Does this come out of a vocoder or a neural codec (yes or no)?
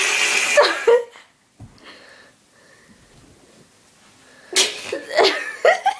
no